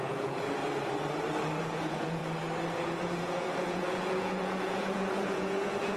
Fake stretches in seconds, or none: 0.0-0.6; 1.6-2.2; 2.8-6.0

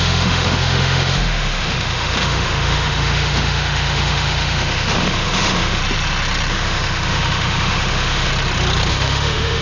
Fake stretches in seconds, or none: 0.0-5.8; 6.5-8.3; 8.9-9.6

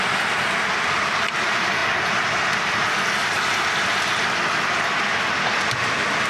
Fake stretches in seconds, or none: none